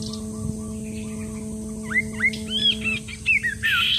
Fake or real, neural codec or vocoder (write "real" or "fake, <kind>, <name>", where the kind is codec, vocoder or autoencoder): real